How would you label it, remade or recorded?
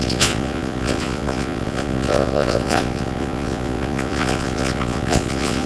remade